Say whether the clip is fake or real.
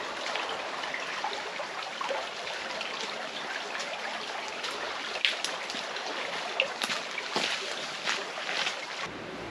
real